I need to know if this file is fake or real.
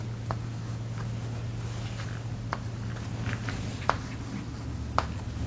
real